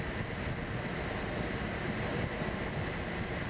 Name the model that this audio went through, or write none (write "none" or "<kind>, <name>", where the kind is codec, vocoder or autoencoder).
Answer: none